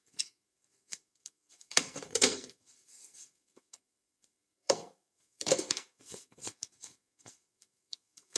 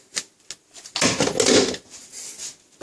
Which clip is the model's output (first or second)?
first